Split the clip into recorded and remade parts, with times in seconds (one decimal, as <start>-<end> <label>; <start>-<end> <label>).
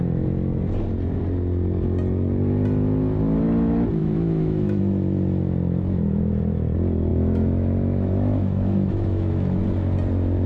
0.0-4.0 recorded; 4.0-4.8 remade; 4.8-7.1 recorded; 7.1-9.6 remade; 9.6-10.5 recorded